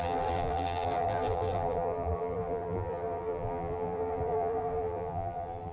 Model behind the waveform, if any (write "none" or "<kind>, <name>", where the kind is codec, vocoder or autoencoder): vocoder, BigVGAN v2